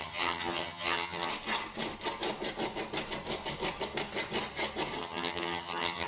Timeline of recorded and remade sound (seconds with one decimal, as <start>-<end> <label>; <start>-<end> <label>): 0.0-1.3 remade; 1.3-5.0 recorded; 5.0-6.1 remade